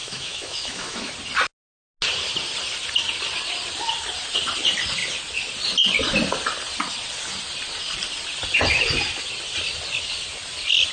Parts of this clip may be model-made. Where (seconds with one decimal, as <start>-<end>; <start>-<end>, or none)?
0.0-1.1